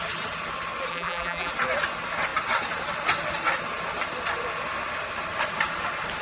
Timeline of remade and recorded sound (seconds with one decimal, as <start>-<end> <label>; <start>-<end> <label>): 0.0-0.9 recorded; 0.9-1.5 remade; 1.5-6.2 recorded